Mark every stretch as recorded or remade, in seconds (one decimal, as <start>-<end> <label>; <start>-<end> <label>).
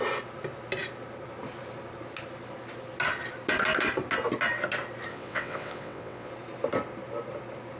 0.0-5.1 recorded; 5.1-6.3 remade; 6.3-7.8 recorded